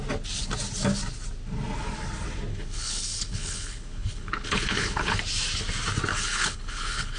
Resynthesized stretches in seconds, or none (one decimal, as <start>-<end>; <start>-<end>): 2.5-5.2; 6.1-7.2